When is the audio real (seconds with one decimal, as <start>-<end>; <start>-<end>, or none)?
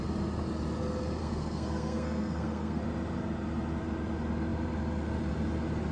0.0-1.2; 2.8-5.9